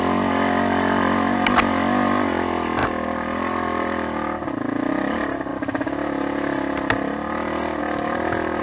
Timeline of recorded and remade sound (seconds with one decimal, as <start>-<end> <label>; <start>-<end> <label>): 0.0-8.6 recorded